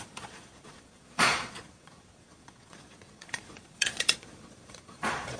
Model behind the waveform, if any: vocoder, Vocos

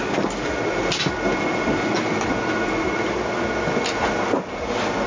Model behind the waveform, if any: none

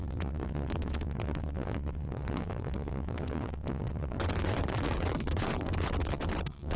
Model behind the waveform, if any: vocoder, WaveNeXt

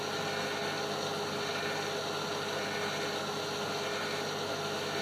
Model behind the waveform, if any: none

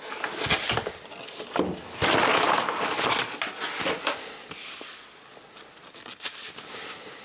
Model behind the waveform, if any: none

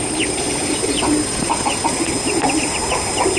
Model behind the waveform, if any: none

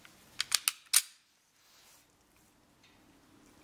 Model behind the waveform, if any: none